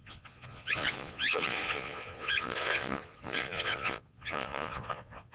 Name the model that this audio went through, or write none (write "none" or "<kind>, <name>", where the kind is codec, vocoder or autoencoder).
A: vocoder, Vocos